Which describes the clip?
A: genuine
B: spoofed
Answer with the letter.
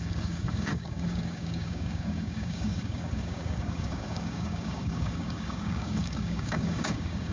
B